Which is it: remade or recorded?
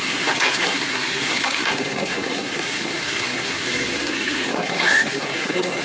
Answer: remade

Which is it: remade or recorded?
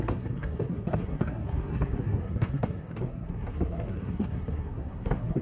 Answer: remade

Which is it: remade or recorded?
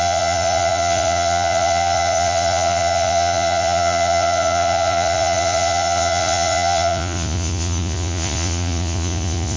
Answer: remade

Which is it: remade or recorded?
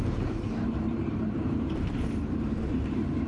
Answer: remade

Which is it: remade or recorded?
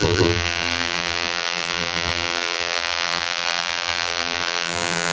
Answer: remade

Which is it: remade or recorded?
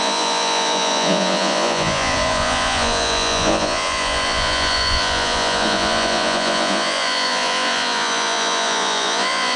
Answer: remade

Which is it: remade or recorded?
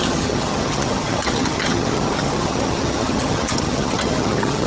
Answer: remade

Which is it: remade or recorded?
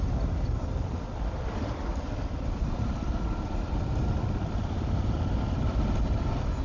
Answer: recorded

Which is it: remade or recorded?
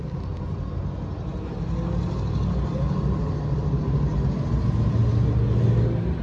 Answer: recorded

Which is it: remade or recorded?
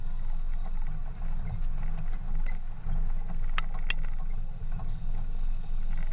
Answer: recorded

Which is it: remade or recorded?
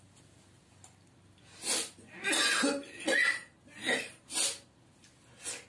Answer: recorded